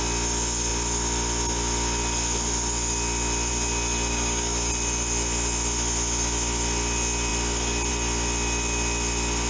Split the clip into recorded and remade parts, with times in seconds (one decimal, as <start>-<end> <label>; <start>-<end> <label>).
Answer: 0.0-4.1 recorded; 4.1-4.7 remade; 4.7-9.5 recorded